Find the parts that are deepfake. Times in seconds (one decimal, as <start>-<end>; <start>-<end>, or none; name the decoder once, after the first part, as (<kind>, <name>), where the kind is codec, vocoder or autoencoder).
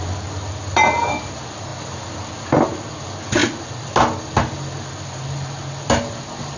none